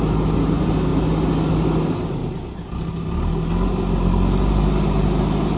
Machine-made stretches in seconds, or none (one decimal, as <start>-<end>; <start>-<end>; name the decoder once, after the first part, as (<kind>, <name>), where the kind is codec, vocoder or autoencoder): none